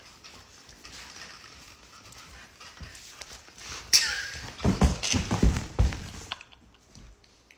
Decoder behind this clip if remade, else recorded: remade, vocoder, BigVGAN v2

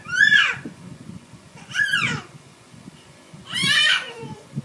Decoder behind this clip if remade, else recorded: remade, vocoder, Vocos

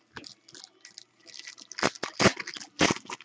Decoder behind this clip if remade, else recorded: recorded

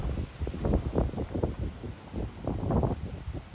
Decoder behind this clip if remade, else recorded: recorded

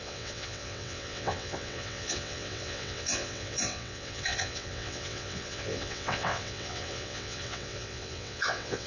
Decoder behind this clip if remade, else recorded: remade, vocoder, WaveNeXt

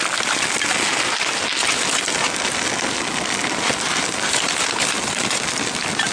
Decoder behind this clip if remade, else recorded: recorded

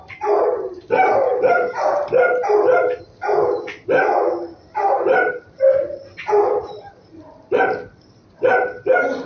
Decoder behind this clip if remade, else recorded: remade, vocoder, BigVGAN v2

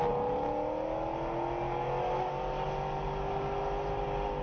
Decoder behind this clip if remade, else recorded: recorded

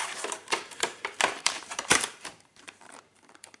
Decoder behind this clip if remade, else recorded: remade, vocoder, BigVGAN v2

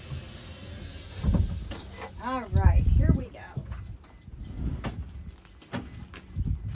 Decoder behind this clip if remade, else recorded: recorded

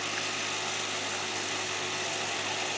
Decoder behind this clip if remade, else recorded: recorded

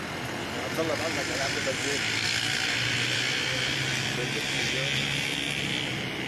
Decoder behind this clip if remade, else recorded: recorded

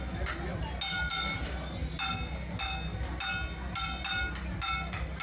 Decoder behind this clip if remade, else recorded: recorded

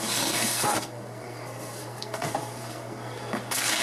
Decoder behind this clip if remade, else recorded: remade, codec, SNAC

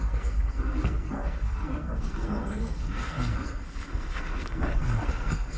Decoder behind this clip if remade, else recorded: remade, codec, SNAC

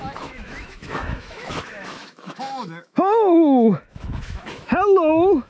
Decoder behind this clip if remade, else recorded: remade, autoencoder, DAC-VAE